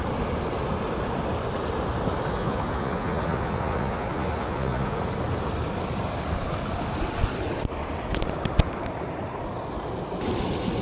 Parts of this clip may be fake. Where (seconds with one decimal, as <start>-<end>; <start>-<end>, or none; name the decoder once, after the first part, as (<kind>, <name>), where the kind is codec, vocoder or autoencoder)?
2.4-5.0 (vocoder, Vocos)